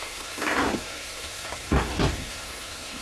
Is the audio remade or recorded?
remade